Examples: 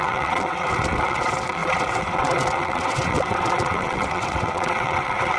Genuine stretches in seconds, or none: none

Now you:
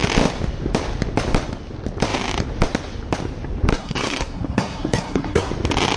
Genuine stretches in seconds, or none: 0.0-3.7; 5.5-6.0

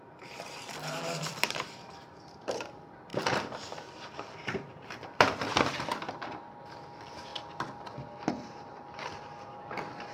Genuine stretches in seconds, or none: 7.3-8.2

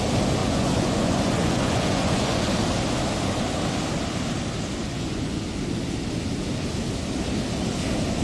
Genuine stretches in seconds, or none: 0.0-0.4; 2.5-4.8; 5.4-8.2

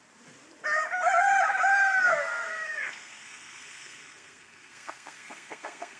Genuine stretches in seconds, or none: 0.0-2.1

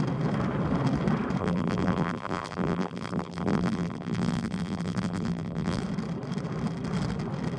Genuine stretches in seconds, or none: 0.0-1.4; 5.8-7.6

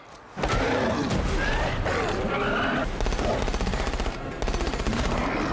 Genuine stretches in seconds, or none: 0.0-5.5